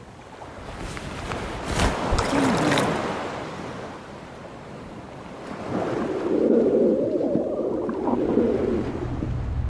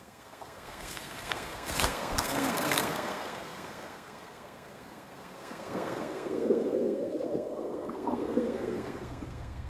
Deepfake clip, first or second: second